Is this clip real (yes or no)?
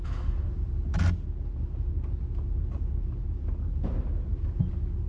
yes